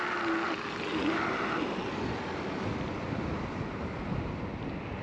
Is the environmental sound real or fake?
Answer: real